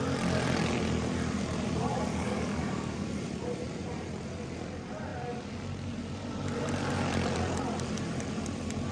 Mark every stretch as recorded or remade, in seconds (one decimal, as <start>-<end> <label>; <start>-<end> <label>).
0.0-2.1 recorded; 2.1-3.1 remade; 3.1-8.9 recorded